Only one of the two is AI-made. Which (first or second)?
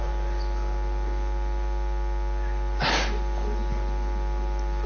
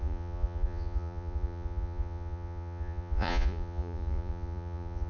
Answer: second